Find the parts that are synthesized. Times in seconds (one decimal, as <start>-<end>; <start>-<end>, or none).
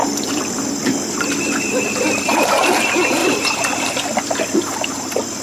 0.0-1.6; 3.2-5.4